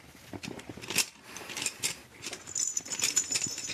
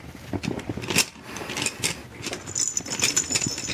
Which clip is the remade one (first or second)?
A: first